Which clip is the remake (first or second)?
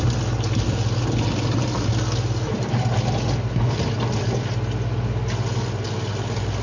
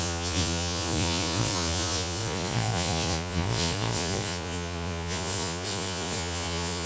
second